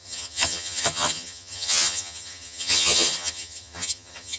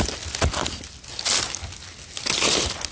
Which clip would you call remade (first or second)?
first